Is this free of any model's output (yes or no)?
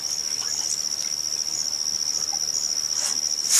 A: yes